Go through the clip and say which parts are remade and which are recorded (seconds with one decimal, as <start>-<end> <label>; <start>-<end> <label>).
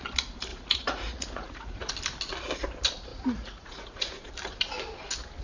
0.0-0.5 recorded; 0.5-1.9 remade; 1.9-3.1 recorded; 3.1-4.3 remade; 4.3-5.4 recorded